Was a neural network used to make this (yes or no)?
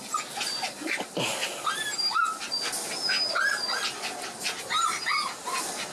no